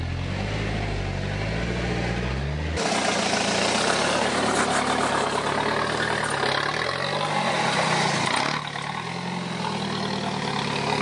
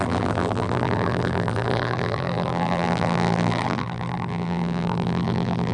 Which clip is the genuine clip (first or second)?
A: first